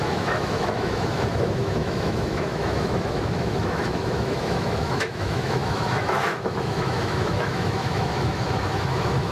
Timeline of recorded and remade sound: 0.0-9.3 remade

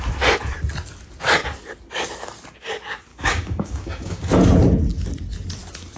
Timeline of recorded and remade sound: 0.0-3.1 recorded; 3.1-4.3 remade; 4.3-6.0 recorded